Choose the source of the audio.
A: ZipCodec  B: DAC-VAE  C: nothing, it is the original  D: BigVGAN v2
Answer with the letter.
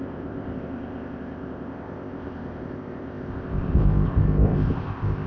A